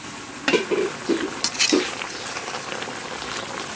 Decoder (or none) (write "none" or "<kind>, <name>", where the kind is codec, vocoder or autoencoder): none